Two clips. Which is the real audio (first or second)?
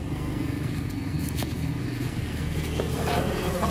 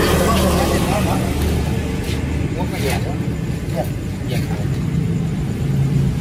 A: second